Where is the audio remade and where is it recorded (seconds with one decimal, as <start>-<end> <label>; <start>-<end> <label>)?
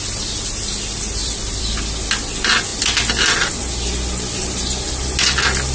0.0-1.2 recorded; 1.2-1.8 remade; 1.8-5.7 recorded